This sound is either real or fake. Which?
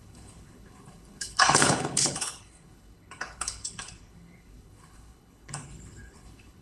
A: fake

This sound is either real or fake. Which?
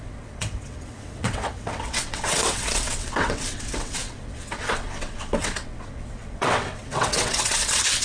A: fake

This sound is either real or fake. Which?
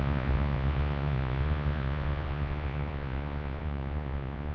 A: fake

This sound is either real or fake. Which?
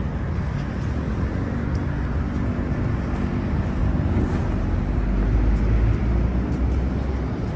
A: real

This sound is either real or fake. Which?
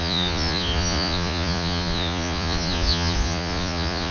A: fake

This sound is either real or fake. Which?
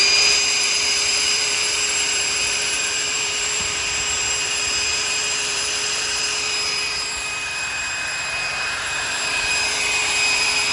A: fake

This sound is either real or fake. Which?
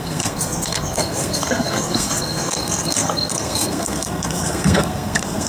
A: fake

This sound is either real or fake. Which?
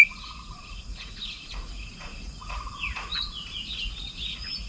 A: fake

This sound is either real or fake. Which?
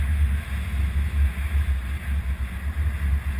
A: real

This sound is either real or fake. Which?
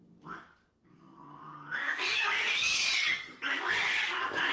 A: fake